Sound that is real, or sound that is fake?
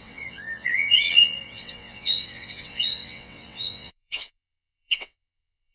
fake